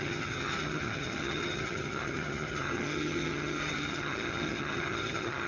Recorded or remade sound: remade